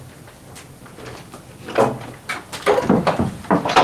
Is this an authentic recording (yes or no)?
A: yes